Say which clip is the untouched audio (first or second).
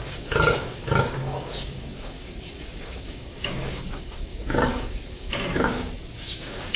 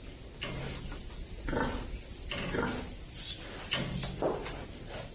second